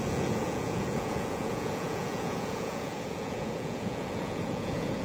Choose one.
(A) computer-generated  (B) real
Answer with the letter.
A